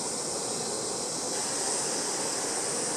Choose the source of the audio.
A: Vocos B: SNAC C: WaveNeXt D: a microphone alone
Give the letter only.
D